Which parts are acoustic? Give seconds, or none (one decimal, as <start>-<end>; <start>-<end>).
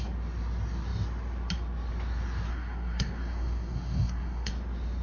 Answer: 0.0-2.5; 4.5-5.0